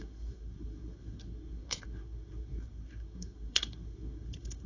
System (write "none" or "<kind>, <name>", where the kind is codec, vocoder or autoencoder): codec, SNAC